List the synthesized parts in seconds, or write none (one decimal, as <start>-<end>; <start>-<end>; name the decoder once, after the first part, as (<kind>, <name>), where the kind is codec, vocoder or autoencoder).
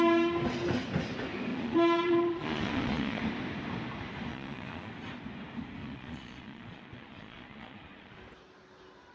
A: 1.5-3.2 (vocoder, Vocos); 4.3-4.9; 5.8-8.2